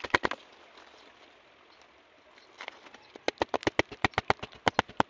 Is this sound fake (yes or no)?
no